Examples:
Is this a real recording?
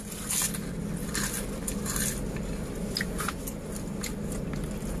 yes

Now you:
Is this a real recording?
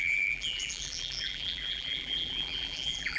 no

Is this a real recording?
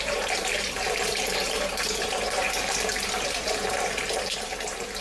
no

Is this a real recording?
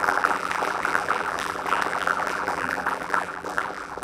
no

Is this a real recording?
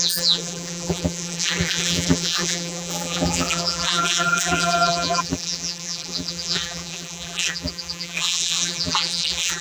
no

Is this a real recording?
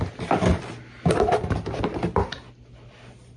yes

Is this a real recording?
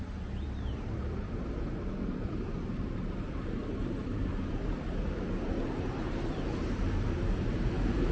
no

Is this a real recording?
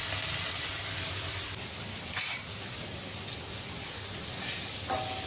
yes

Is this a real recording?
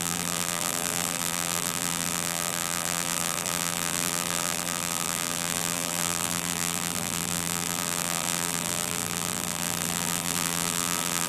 no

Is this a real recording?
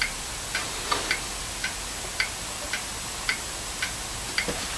yes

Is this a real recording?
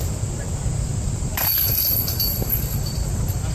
no